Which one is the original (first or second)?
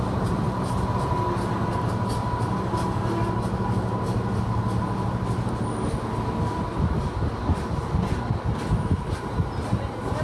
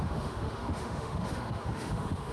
first